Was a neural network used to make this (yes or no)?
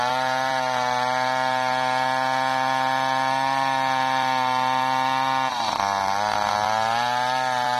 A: no